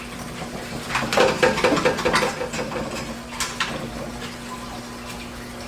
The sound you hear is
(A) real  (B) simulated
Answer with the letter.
A